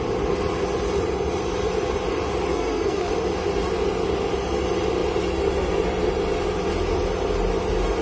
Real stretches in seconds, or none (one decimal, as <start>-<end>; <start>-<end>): 0.0-2.5; 3.1-8.0